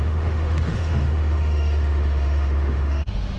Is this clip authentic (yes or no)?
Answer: no